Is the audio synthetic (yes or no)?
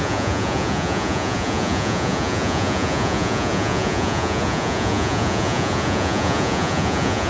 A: yes